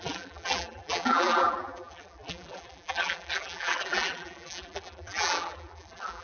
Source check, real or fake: fake